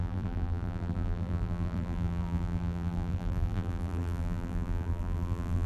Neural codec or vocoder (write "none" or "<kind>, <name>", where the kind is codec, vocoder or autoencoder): vocoder, BigVGAN v2